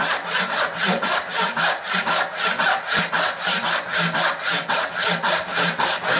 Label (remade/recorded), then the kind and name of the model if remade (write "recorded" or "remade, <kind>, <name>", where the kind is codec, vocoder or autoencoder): recorded